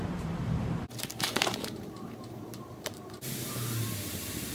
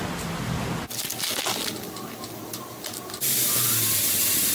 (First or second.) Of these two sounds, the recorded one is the second